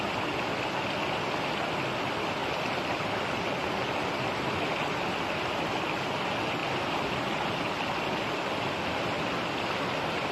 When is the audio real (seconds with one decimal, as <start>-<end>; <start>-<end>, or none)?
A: 0.0-10.3